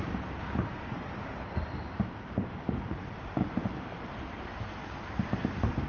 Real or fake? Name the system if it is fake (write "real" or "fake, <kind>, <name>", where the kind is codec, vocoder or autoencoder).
fake, vocoder, BigVGAN v2